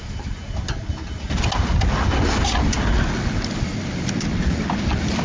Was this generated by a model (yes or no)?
no